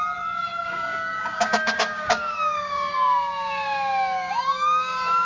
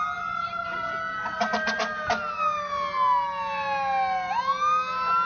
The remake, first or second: first